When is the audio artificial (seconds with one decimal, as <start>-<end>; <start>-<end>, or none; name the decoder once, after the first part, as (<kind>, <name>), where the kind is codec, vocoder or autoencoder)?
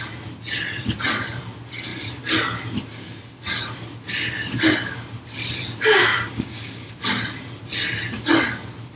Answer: 6.1-6.9 (codec, DAC)